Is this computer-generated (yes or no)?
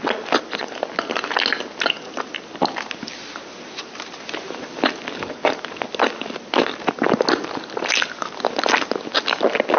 no